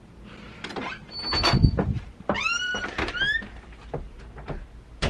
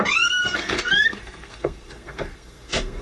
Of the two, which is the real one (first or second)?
first